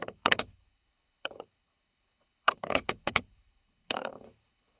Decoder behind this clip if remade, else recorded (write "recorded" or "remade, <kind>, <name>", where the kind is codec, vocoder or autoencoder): remade, codec, HILCodec